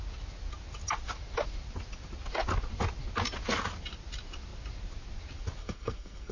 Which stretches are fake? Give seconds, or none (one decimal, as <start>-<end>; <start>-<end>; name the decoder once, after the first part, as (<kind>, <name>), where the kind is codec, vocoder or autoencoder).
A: 5.6-6.3 (codec, SNAC)